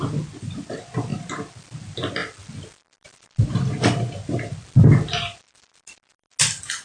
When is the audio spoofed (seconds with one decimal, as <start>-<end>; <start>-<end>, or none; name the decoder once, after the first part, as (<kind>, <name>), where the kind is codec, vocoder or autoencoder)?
none